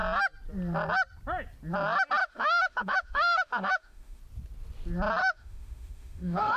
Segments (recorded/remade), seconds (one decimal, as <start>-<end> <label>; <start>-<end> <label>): 0.0-2.2 recorded; 2.2-4.2 remade; 4.2-5.2 recorded; 5.2-6.6 remade